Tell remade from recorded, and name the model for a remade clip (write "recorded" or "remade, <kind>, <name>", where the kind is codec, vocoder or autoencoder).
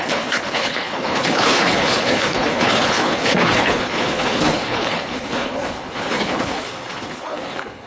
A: remade, codec, HILCodec